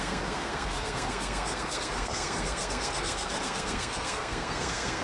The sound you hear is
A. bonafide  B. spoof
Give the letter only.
B